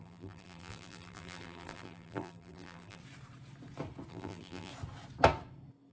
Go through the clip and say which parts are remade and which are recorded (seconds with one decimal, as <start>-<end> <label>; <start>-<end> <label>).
0.0-3.0 remade; 3.0-4.1 recorded; 4.1-4.7 remade; 4.7-5.9 recorded